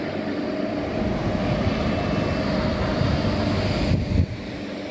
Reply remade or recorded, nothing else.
recorded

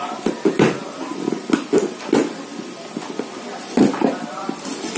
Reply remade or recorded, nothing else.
recorded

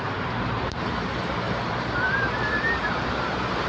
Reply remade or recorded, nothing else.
remade